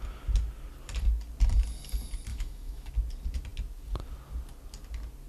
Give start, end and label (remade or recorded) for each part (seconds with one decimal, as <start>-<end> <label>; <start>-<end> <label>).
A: 0.0-2.3 recorded; 2.3-2.9 remade; 2.9-5.3 recorded